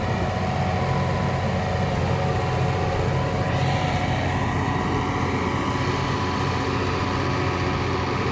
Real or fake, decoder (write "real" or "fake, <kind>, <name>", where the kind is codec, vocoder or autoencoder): real